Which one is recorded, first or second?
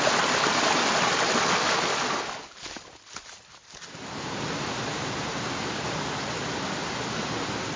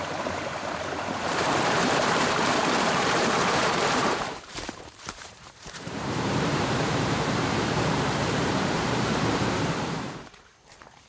first